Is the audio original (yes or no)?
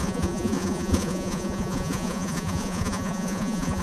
no